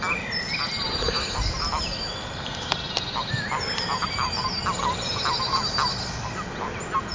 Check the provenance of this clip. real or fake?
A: real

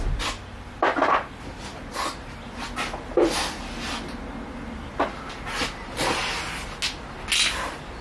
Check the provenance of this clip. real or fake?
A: real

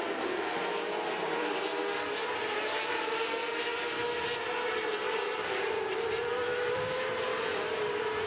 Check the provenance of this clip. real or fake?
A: fake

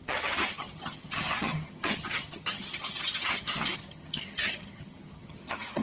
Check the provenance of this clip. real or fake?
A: fake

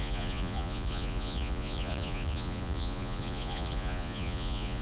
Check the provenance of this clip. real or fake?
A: fake